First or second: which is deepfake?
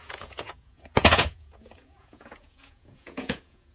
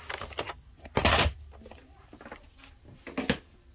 first